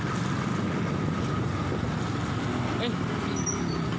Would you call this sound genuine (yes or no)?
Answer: yes